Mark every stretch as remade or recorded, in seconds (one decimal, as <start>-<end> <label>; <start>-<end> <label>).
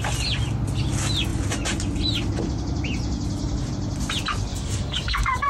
0.0-4.5 recorded; 4.5-5.5 remade